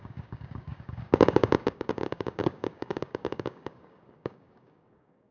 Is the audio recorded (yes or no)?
no